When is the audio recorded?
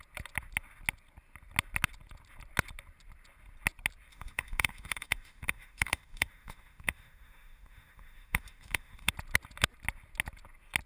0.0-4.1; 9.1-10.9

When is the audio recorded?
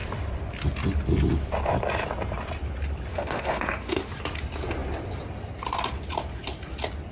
0.0-3.1; 4.1-7.1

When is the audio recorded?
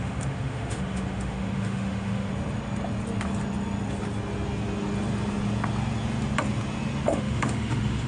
2.3-7.1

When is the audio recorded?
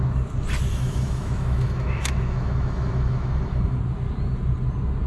0.0-0.7; 3.8-5.1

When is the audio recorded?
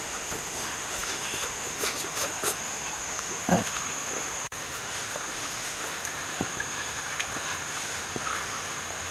none